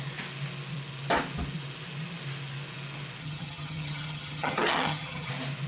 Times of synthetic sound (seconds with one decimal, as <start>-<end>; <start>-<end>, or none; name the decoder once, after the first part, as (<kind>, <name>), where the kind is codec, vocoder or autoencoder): 3.2-5.3 (vocoder, HiFi-GAN)